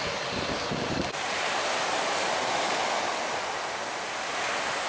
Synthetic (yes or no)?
no